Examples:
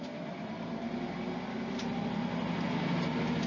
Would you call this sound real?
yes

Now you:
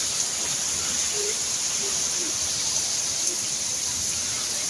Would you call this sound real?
yes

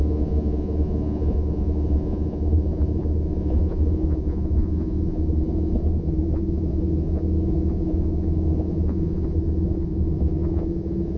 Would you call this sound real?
no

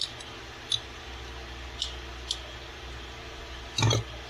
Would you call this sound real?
yes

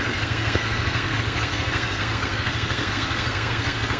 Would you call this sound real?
no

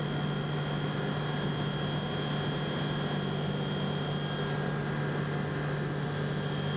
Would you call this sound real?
yes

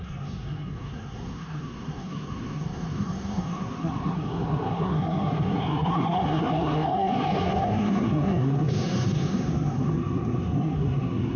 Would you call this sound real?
no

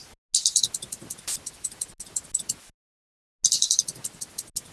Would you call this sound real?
yes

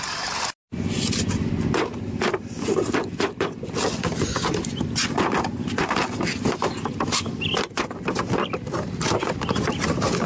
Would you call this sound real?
yes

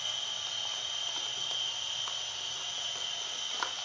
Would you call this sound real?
yes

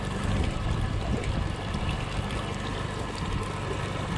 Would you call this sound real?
yes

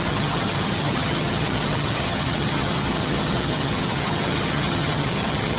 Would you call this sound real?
no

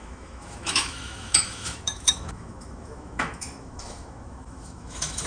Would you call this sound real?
no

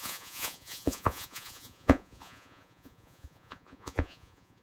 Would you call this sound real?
no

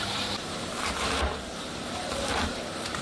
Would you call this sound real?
no